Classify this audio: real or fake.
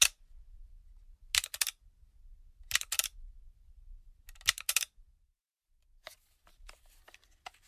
real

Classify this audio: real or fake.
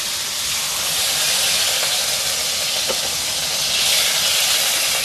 real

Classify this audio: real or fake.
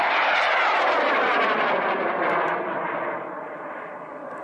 fake